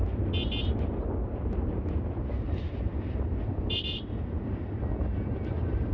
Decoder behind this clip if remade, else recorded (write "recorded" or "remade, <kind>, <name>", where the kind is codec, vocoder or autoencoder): recorded